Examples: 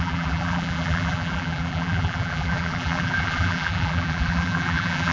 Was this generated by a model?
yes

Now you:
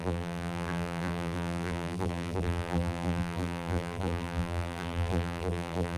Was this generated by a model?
yes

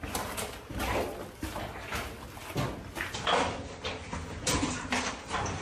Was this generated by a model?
no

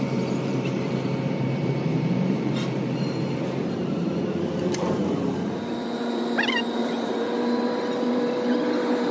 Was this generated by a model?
yes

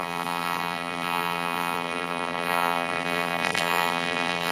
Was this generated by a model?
yes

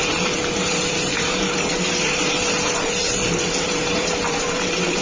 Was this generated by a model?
yes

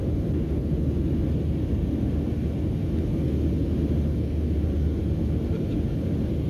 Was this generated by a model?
no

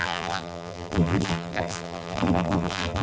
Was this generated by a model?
yes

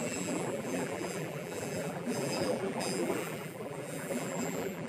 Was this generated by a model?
yes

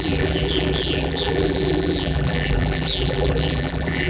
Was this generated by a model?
yes